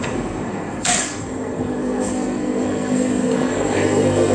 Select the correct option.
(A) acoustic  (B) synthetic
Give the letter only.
B